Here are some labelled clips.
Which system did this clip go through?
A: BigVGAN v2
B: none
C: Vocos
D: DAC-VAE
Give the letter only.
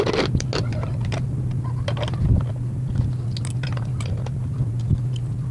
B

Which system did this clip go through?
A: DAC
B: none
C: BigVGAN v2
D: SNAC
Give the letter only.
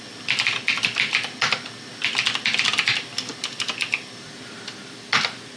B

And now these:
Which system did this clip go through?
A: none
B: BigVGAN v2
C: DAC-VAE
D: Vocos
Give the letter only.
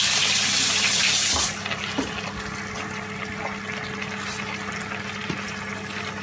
A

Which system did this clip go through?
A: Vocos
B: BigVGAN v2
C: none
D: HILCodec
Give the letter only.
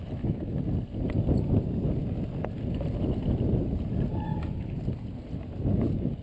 C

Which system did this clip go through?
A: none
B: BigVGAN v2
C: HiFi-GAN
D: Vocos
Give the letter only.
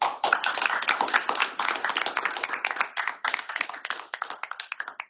A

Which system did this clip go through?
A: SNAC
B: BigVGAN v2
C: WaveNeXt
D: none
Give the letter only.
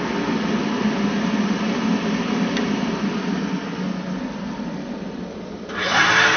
D